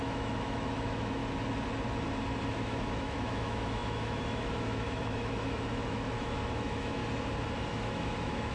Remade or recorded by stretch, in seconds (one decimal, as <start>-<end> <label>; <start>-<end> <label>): 0.0-1.2 remade; 1.2-2.5 recorded; 2.5-7.0 remade; 7.0-7.7 recorded; 7.7-8.5 remade